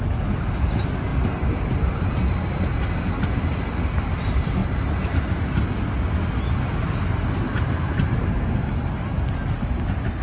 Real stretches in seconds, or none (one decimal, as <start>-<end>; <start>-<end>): 0.0-10.2